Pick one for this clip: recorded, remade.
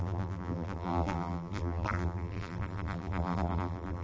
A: remade